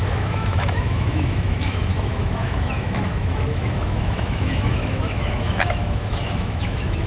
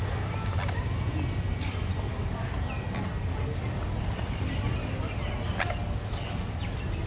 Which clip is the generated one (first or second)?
first